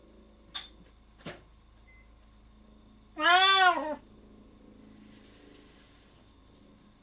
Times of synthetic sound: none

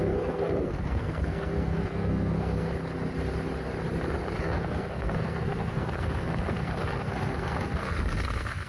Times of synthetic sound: 0.0-2.7 (codec, SNAC); 4.4-8.7